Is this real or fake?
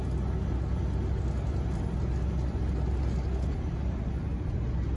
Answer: real